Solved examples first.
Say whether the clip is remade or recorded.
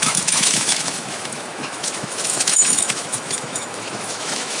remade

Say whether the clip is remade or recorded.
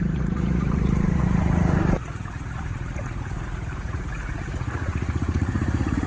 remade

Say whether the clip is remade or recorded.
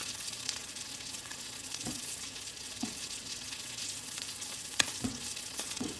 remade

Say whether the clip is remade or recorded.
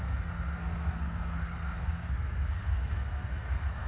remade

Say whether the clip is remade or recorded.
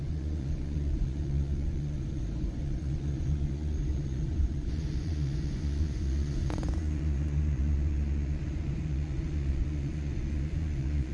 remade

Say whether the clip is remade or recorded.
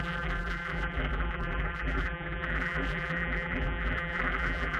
remade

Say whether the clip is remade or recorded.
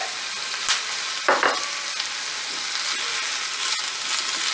recorded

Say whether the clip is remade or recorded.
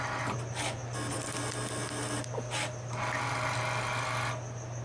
recorded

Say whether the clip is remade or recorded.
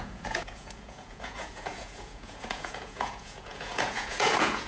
remade